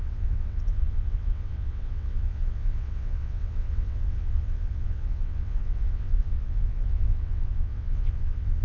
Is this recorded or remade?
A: remade